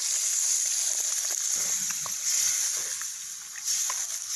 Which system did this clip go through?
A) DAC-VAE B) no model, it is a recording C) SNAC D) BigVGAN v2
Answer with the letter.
B